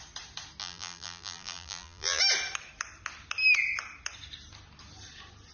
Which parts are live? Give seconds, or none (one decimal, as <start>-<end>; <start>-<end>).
0.0-0.6; 2.2-5.5